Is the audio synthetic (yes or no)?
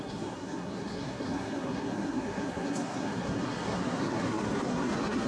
yes